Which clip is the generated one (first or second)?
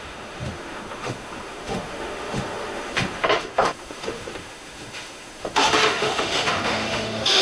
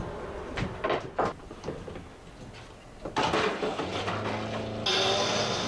first